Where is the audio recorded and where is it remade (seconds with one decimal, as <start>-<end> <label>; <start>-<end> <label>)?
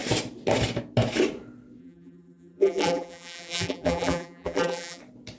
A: 0.0-1.8 recorded; 1.8-5.0 remade; 5.0-5.4 recorded